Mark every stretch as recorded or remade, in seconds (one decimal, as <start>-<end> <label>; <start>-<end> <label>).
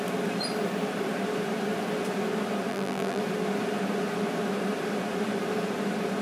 0.0-2.7 recorded; 2.7-3.2 remade; 3.2-6.2 recorded